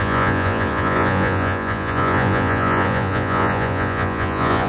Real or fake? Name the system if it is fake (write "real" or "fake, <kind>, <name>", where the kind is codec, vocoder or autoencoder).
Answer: fake, vocoder, Vocos